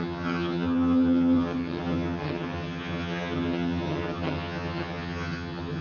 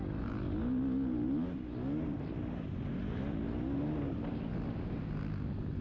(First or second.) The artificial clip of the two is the first